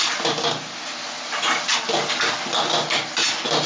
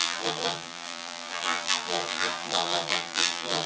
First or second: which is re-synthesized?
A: second